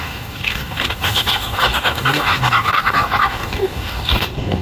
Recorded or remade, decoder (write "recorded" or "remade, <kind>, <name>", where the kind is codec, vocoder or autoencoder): remade, codec, DAC